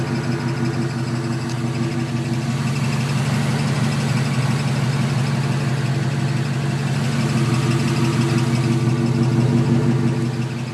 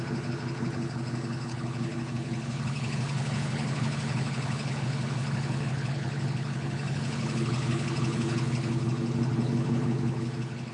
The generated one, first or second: second